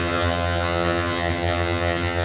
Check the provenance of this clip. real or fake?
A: fake